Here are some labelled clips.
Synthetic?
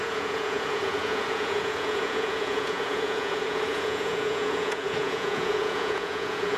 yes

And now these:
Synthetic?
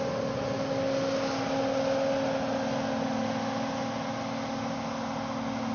no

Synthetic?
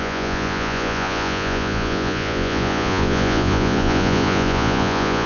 yes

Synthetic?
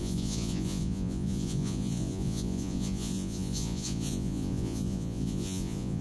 yes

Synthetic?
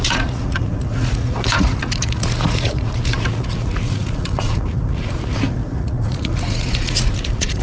yes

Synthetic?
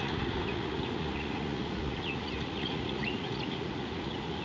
yes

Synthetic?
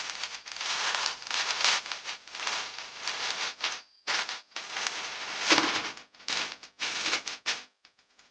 no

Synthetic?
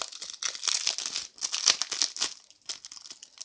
no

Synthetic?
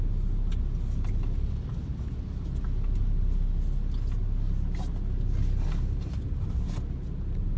no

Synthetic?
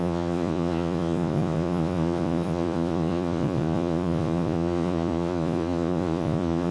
yes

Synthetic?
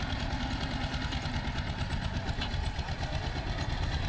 no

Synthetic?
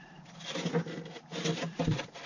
no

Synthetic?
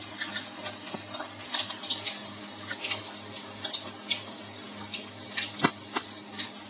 no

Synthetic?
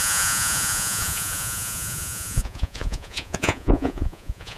yes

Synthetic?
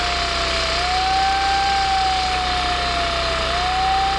no